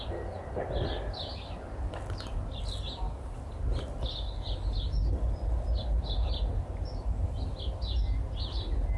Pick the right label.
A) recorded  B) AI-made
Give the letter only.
A